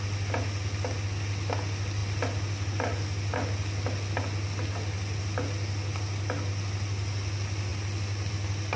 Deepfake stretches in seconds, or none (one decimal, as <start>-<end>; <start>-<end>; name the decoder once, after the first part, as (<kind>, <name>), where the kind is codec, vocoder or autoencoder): none